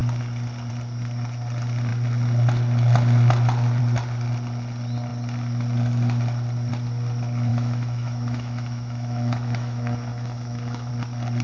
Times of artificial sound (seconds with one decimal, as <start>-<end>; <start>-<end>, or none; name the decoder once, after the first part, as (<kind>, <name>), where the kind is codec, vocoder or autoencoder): 7.5-10.9 (autoencoder, DAC-VAE)